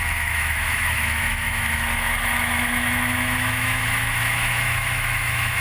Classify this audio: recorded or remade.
remade